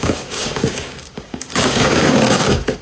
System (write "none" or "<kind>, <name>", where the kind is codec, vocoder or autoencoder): codec, DAC